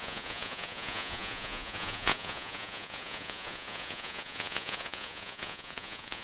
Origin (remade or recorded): remade